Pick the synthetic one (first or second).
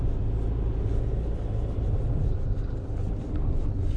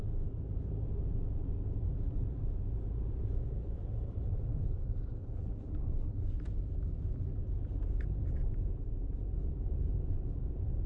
second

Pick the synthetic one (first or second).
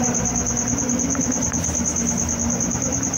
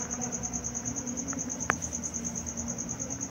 first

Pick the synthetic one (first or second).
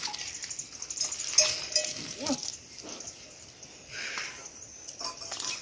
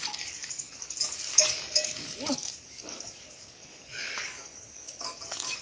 second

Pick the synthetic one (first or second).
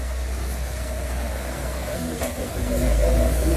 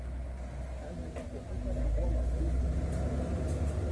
first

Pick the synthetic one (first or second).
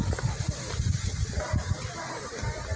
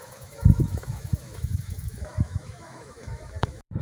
second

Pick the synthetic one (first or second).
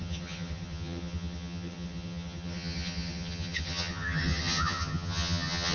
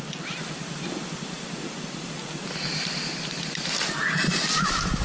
first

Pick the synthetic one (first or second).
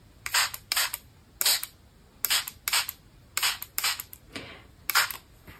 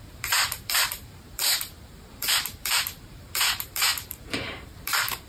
second